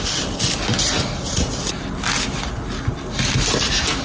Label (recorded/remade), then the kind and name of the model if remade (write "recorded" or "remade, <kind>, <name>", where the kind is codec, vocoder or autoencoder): recorded